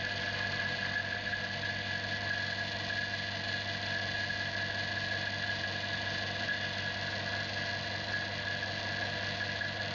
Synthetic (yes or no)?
no